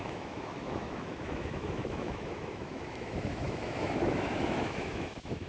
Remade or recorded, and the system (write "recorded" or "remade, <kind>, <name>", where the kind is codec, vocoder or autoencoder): remade, autoencoder, DAC-VAE